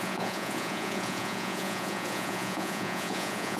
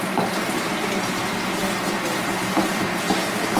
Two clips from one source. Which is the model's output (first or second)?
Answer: first